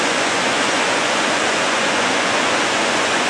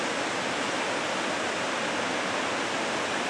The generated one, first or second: first